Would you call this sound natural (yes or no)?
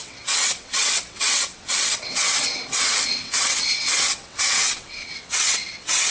no